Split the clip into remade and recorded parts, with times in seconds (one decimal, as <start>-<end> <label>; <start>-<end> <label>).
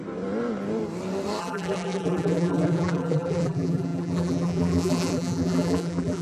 0.0-1.4 recorded; 1.4-6.2 remade